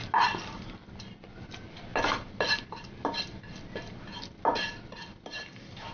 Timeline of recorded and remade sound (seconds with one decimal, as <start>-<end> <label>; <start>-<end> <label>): 0.0-1.9 remade; 1.9-2.6 recorded; 2.6-5.9 remade